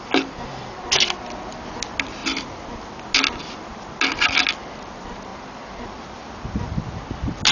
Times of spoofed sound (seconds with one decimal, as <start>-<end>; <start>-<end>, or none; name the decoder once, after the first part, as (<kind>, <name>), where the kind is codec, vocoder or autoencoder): none